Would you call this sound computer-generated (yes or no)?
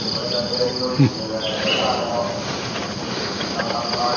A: no